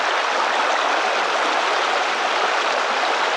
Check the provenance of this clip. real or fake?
real